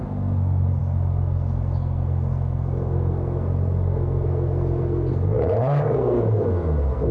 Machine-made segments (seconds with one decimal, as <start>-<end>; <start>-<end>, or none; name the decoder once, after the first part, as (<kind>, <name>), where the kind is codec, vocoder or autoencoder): 0.0-7.1 (codec, SNAC)